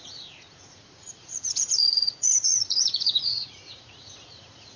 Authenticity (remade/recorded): remade